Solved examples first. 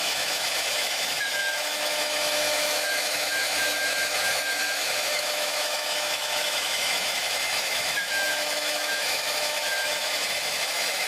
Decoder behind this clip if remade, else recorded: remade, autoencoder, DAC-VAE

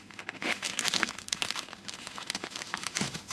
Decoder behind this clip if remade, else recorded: remade, autoencoder, DAC-VAE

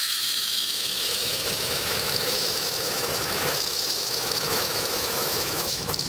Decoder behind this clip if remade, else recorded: remade, autoencoder, DAC-VAE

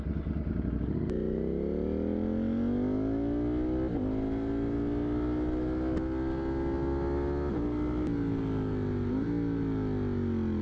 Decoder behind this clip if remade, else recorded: recorded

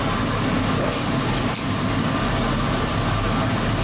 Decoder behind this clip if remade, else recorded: recorded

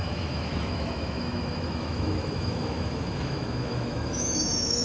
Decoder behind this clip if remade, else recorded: remade, autoencoder, DAC-VAE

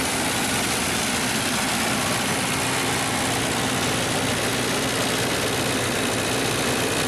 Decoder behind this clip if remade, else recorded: recorded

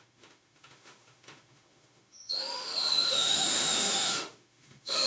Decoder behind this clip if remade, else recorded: remade, autoencoder, DAC-VAE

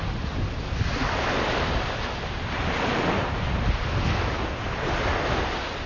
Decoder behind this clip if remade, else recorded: recorded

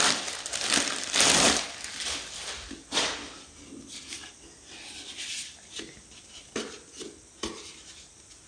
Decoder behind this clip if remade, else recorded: recorded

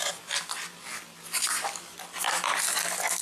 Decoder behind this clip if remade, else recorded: recorded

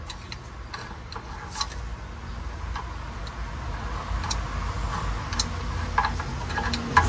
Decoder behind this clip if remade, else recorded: recorded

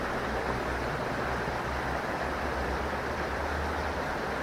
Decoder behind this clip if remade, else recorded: recorded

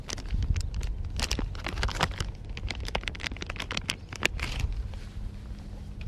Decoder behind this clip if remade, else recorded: recorded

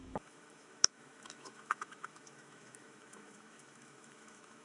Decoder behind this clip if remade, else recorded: remade, autoencoder, DAC-VAE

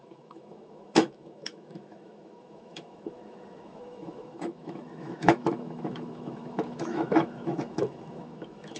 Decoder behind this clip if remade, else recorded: remade, autoencoder, DAC-VAE